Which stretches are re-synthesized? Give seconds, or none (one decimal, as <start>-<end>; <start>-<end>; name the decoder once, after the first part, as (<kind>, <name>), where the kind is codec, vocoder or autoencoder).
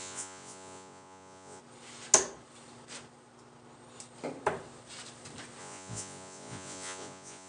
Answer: 0.0-1.6 (vocoder, Vocos); 5.6-7.5